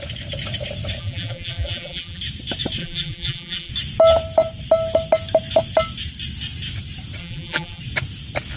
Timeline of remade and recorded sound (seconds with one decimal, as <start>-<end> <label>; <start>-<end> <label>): 0.0-1.0 recorded; 1.0-2.2 remade; 2.2-2.8 recorded; 2.8-3.7 remade; 3.7-7.2 recorded; 7.2-7.8 remade; 7.8-8.6 recorded